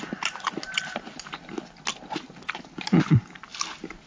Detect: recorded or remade recorded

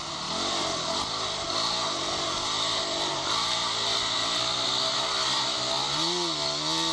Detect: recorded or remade recorded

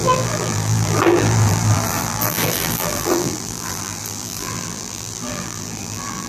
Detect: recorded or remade remade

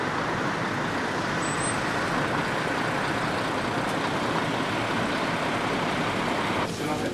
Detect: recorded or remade recorded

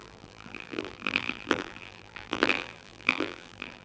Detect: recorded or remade remade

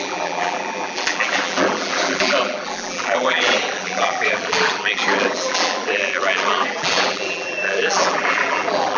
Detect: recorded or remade remade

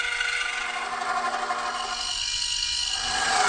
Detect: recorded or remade recorded